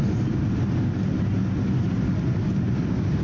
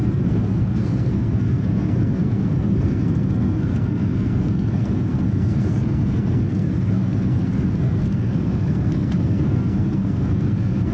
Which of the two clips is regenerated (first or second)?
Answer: second